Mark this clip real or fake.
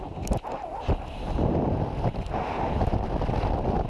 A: real